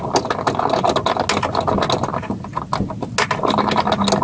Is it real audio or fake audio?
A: real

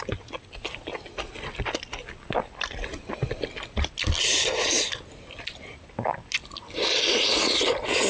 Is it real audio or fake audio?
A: real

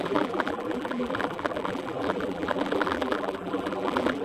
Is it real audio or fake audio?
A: fake